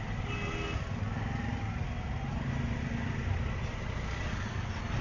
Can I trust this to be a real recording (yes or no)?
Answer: yes